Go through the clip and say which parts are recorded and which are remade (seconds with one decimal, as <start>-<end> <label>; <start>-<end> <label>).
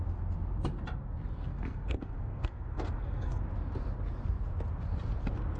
0.0-1.5 recorded; 1.5-3.4 remade; 3.4-5.6 recorded